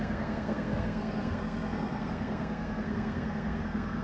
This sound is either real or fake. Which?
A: fake